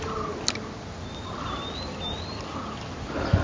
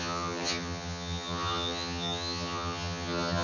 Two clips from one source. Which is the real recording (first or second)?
first